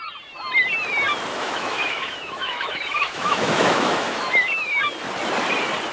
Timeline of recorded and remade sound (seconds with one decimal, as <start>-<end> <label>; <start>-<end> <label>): 0.0-1.3 recorded; 1.3-4.8 remade; 4.8-5.9 recorded